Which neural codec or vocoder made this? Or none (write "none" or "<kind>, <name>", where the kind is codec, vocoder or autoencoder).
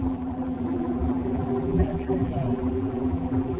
vocoder, BigVGAN v2